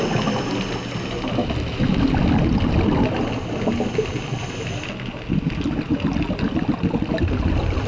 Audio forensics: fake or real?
real